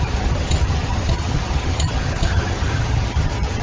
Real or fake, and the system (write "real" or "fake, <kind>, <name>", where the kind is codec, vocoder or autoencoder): fake, vocoder, HiFi-GAN